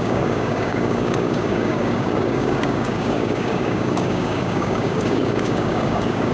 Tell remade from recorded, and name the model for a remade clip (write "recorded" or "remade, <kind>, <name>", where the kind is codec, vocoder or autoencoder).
remade, codec, DAC